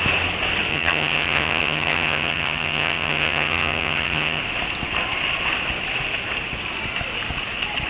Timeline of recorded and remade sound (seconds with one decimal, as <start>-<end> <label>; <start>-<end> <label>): 0.0-0.7 recorded; 0.7-4.4 remade; 4.4-7.9 recorded